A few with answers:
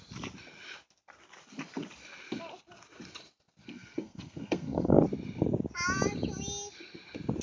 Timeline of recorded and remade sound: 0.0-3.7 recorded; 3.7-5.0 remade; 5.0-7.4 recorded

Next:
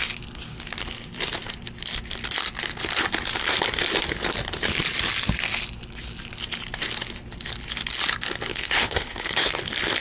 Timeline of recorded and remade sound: 0.0-8.5 recorded; 8.5-9.5 remade; 9.5-10.0 recorded

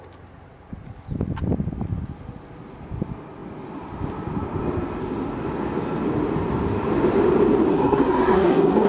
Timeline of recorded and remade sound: 0.0-7.7 recorded; 7.7-8.9 remade

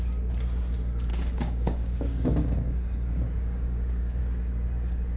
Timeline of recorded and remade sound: 0.0-1.1 recorded; 1.1-4.2 remade; 4.2-5.2 recorded